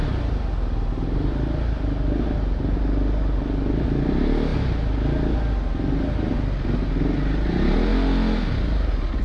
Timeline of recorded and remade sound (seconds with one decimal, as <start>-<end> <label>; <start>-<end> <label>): 0.0-9.2 recorded

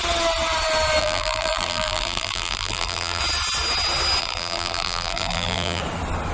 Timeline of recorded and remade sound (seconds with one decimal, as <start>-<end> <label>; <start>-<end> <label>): 0.0-1.0 recorded; 1.0-3.2 remade; 3.2-4.2 recorded; 4.2-5.8 remade; 5.8-6.3 recorded

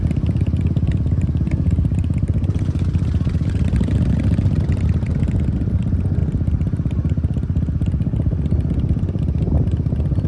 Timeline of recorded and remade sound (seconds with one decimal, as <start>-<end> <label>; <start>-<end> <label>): 0.0-6.2 remade; 6.2-10.3 recorded